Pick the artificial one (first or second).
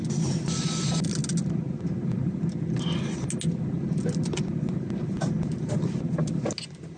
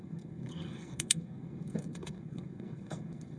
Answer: second